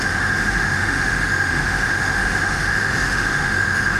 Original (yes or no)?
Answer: no